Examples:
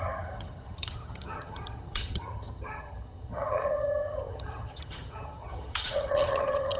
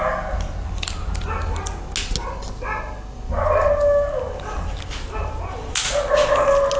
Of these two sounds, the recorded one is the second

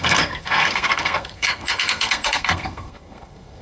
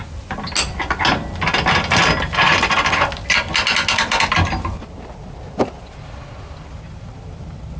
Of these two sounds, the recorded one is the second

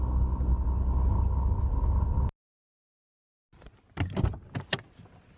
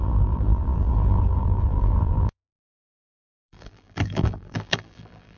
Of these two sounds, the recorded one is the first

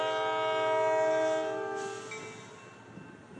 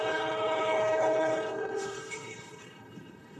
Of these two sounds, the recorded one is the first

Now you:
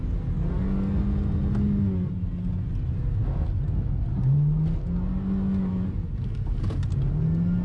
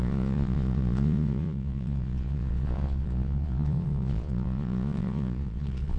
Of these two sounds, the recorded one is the first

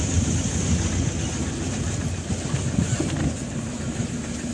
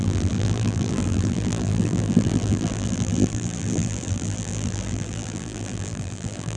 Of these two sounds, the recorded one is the first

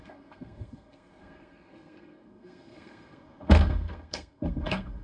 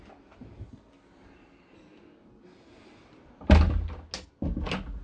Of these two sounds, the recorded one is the second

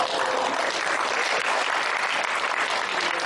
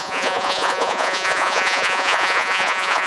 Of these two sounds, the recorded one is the first